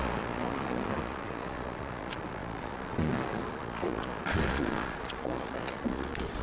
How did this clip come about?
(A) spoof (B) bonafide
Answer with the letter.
A